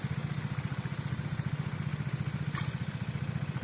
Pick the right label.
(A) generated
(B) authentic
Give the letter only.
B